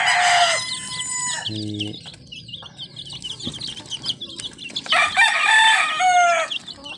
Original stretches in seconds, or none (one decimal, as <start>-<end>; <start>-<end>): 0.0-7.0